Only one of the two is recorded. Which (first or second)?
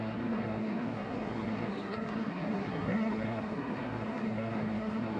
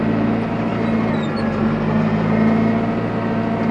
second